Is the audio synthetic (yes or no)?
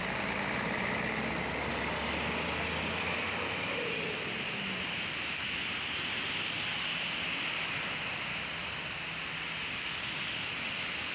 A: no